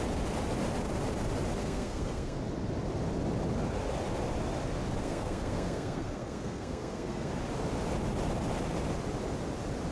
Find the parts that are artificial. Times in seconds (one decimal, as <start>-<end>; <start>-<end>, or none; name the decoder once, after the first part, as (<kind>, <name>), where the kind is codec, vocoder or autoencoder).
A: 1.6-2.4 (codec, SNAC); 5.0-7.3